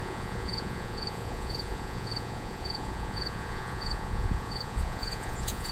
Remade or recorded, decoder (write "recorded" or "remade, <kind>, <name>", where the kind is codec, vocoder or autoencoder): remade, vocoder, Vocos